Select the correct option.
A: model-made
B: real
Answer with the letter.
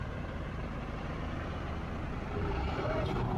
A